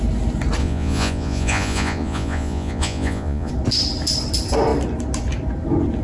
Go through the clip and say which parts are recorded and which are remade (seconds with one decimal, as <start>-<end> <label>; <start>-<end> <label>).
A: 0.0-0.6 recorded; 0.6-3.5 remade; 3.5-6.0 recorded